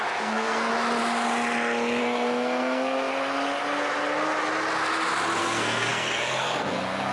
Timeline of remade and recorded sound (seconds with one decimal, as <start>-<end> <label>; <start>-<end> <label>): 0.0-0.7 remade; 0.7-2.0 recorded; 2.0-3.1 remade; 3.1-5.4 recorded; 5.4-7.1 remade